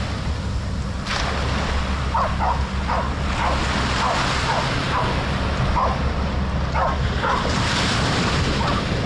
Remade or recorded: recorded